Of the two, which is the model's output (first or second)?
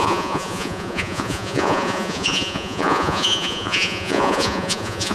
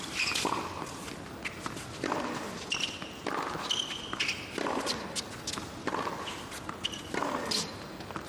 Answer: first